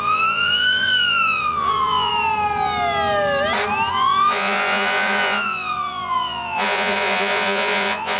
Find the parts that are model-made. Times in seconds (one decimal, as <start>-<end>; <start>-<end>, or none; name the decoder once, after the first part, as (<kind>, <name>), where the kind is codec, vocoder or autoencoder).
0.0-2.1 (vocoder, Vocos); 3.9-8.2

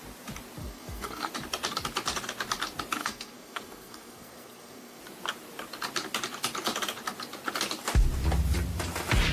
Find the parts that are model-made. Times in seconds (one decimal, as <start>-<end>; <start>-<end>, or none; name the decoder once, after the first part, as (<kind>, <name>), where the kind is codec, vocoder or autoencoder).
0.6-1.3 (codec, SNAC); 3.0-5.0

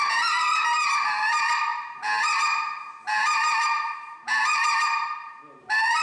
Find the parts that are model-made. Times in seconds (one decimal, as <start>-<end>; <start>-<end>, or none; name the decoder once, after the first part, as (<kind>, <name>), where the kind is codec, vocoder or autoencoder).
none

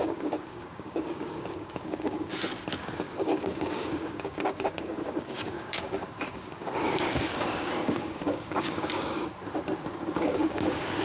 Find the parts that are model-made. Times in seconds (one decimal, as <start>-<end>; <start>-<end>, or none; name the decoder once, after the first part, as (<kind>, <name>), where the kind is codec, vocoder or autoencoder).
0.0-2.3 (codec, DAC); 2.8-9.3; 9.9-11.0

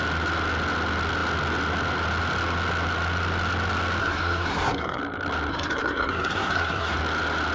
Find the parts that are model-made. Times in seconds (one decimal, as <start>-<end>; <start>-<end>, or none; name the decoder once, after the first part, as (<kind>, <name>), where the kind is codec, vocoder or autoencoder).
4.0-5.0 (codec, SNAC); 5.5-7.0

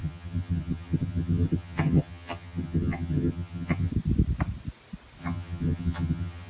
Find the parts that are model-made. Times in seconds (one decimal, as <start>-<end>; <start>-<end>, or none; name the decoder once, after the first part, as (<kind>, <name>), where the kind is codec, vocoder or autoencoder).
0.0-3.9 (vocoder, HiFi-GAN); 5.2-6.5

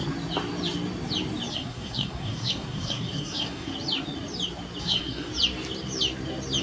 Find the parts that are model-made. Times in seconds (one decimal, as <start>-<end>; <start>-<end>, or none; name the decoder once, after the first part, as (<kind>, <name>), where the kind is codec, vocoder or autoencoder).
1.5-3.7 (codec, SNAC); 4.8-5.3